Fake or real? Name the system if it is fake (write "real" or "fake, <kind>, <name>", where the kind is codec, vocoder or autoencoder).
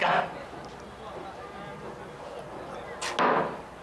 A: real